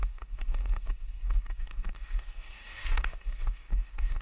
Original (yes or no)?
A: no